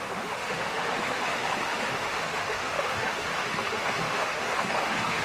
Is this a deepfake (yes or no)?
yes